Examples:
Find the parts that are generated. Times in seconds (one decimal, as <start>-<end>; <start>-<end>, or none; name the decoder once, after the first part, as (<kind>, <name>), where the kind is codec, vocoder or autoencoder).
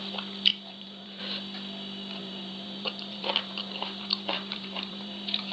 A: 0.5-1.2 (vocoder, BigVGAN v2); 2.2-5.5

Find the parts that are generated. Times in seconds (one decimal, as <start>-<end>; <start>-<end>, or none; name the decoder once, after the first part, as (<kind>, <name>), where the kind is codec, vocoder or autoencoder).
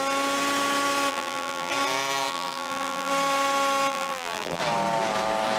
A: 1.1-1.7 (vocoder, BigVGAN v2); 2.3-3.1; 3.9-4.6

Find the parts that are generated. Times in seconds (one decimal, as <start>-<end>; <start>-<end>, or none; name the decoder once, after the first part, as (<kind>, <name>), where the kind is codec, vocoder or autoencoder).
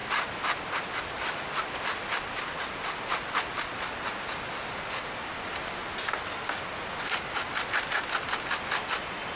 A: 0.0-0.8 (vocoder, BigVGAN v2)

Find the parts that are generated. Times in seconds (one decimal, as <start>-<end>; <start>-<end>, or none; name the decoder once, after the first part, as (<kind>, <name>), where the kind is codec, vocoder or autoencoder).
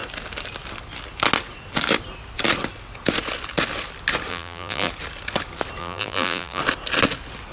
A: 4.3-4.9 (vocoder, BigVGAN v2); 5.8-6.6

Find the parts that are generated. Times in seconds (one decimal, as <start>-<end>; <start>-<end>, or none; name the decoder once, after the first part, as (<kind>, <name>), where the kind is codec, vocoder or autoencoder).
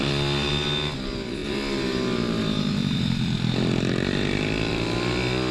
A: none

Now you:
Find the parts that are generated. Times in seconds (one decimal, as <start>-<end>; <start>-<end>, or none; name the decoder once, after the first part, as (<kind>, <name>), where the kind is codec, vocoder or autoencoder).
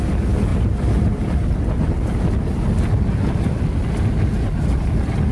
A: none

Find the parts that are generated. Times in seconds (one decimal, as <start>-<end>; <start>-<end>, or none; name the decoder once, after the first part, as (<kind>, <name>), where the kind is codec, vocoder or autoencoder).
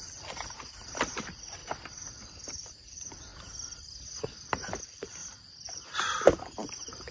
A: 0.0-1.6 (vocoder, BigVGAN v2); 2.5-3.3; 4.8-5.2; 5.7-7.1